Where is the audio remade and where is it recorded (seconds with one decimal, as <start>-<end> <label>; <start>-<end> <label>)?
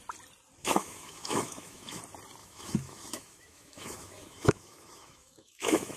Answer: 0.0-0.6 recorded; 0.6-2.0 remade; 2.0-2.4 recorded; 2.4-6.0 remade